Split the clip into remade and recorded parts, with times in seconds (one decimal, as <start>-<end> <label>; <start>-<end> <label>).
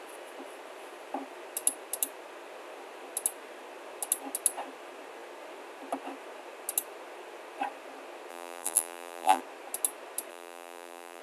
0.0-8.3 recorded; 8.3-9.4 remade; 9.4-10.3 recorded; 10.3-11.2 remade